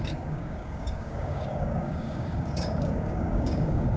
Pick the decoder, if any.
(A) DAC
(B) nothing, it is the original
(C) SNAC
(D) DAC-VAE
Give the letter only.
A